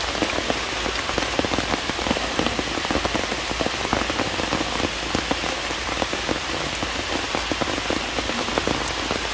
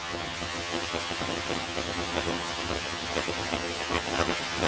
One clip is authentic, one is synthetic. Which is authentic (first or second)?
first